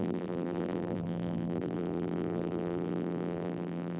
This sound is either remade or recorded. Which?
remade